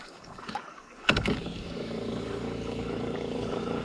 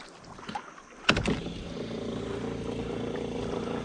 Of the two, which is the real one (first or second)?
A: second